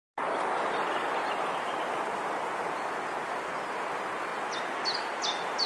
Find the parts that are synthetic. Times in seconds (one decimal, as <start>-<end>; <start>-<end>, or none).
none